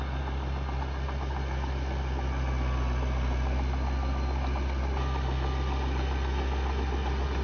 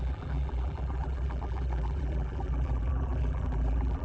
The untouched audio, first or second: first